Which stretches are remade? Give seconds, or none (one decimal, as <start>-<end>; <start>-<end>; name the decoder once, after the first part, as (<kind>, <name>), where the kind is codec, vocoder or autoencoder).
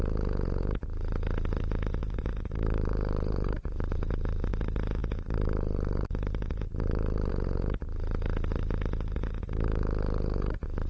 2.0-4.5 (vocoder, BigVGAN v2); 5.0-7.3